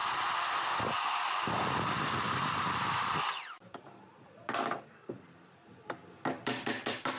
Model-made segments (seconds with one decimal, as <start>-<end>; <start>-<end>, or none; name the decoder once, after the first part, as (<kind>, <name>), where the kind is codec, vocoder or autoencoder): 2.0-7.2 (vocoder, BigVGAN v2)